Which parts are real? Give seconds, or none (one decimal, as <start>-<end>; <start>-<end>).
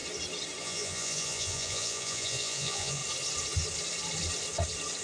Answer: 0.0-0.6; 3.0-5.0